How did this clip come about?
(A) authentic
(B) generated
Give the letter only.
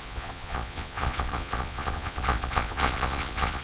B